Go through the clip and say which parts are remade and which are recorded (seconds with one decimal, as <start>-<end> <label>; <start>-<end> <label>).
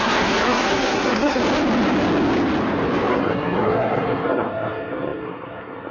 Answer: 0.0-1.4 remade; 1.4-3.1 recorded; 3.1-5.9 remade